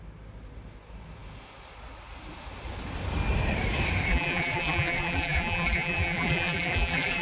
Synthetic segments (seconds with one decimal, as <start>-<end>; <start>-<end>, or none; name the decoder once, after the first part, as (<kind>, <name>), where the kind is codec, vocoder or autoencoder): 4.1-7.2 (vocoder, BigVGAN v2)